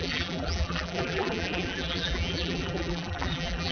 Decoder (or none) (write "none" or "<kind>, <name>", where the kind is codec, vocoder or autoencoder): vocoder, BigVGAN v2